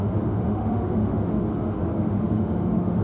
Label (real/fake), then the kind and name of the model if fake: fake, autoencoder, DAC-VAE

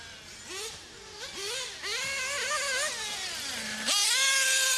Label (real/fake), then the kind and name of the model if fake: real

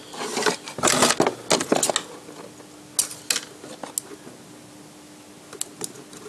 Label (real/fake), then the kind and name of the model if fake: real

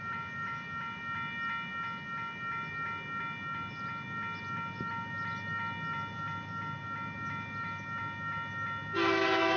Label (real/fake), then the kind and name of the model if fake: real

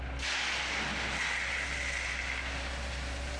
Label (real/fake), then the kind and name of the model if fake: real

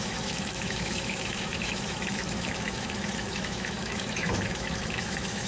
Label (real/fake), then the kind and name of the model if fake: fake, autoencoder, DAC-VAE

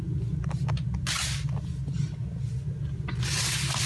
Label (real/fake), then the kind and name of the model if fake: real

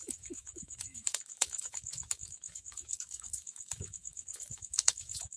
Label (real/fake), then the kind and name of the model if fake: fake, autoencoder, DAC-VAE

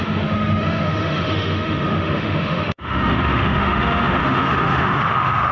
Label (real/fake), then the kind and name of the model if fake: fake, autoencoder, DAC-VAE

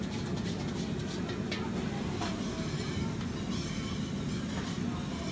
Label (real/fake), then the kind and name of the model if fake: real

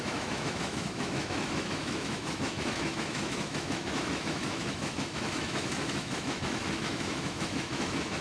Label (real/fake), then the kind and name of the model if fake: fake, autoencoder, DAC-VAE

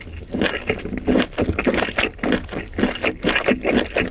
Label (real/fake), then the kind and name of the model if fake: real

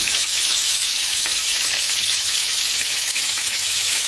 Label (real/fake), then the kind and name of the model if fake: fake, autoencoder, DAC-VAE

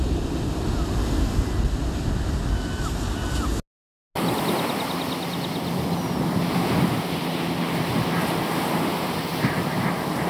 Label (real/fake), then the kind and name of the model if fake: real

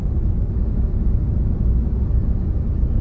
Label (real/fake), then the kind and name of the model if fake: real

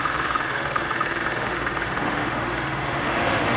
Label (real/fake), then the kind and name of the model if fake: fake, autoencoder, DAC-VAE